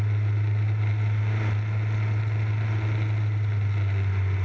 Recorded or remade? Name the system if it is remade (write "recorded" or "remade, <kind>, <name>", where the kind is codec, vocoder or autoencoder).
recorded